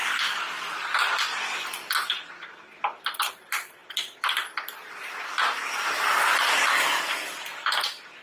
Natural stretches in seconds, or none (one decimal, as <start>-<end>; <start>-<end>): none